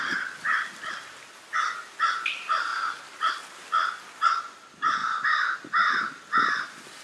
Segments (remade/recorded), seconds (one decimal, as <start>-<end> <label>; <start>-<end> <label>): 0.0-7.0 recorded